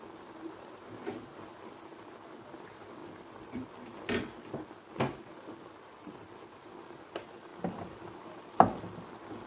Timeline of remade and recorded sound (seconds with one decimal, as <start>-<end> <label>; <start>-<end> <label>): 0.0-3.0 recorded; 3.0-4.0 remade; 4.0-9.5 recorded